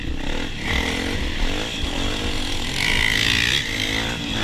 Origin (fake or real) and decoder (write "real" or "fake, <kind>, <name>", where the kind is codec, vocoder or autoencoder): real